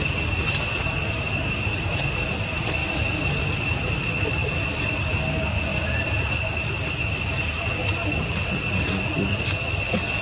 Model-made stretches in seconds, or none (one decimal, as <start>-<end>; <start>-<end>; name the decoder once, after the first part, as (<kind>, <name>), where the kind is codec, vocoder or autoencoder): none